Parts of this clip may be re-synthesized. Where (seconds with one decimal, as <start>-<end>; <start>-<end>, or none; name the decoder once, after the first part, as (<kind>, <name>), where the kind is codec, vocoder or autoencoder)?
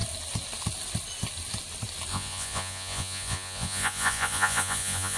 2.1-5.2 (vocoder, Vocos)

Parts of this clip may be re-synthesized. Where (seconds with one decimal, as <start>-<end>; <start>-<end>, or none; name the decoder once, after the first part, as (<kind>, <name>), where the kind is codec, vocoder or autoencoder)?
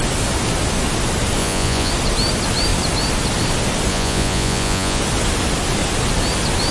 1.4-1.9 (vocoder, Vocos); 3.9-5.0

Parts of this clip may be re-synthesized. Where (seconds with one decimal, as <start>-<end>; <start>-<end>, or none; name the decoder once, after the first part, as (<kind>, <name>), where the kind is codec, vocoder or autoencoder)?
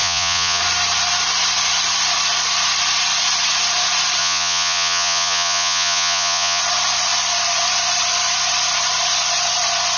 0.0-0.6 (vocoder, Vocos); 4.2-6.6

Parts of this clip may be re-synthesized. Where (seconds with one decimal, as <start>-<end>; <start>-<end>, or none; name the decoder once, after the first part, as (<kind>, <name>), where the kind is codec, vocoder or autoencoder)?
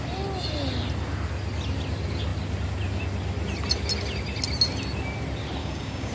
5.6-6.1 (codec, DAC)